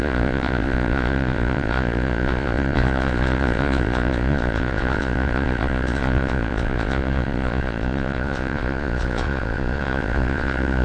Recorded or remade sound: remade